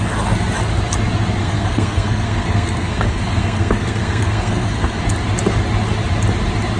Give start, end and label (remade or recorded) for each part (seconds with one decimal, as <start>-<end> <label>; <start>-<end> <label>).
0.0-1.4 recorded; 1.4-5.0 remade; 5.0-6.8 recorded